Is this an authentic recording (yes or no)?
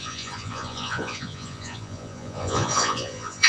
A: no